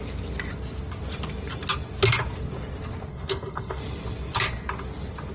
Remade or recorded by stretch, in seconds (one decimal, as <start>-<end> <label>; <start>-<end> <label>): 0.0-3.1 recorded; 3.1-3.8 remade; 3.8-5.3 recorded

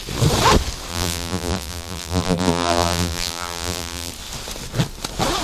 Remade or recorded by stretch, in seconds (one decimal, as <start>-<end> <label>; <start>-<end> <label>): 0.0-0.9 recorded; 0.9-4.1 remade; 4.1-5.4 recorded